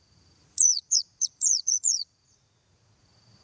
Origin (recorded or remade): remade